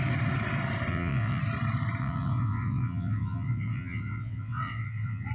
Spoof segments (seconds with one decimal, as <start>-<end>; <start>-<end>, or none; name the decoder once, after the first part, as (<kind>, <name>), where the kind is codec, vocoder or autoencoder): 0.9-1.4 (vocoder, WaveNeXt); 2.0-5.3

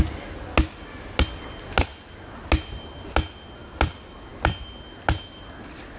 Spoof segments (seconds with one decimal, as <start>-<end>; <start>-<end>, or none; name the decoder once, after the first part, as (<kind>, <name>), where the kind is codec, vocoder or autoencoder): none

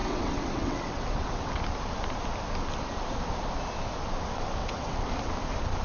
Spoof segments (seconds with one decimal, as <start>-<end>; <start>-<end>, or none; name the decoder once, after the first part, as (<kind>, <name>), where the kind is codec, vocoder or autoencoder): 0.0-1.6 (vocoder, WaveNeXt); 4.6-5.1

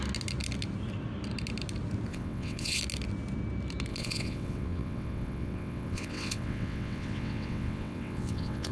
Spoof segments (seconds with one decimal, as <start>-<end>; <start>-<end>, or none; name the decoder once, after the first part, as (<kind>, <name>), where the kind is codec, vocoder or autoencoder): 2.1-2.8 (vocoder, WaveNeXt); 3.9-8.7

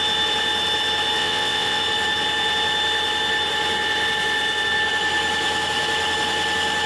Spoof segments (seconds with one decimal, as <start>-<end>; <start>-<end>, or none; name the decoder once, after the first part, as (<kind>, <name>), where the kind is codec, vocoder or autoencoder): 1.2-1.8 (vocoder, WaveNeXt)

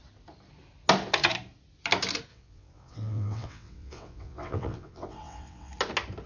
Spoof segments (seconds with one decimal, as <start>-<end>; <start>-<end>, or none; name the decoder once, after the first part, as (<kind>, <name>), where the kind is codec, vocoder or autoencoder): 2.3-5.7 (vocoder, WaveNeXt)

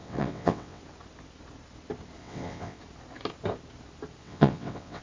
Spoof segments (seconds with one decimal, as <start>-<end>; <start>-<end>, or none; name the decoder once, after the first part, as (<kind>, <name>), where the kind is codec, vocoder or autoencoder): 0.0-0.8 (vocoder, WaveNeXt); 2.2-2.8; 4.2-5.0

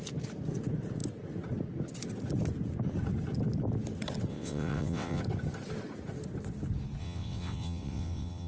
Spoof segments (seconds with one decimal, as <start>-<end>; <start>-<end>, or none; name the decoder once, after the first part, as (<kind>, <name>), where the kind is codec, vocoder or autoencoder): 4.3-5.2 (vocoder, WaveNeXt); 7.0-8.5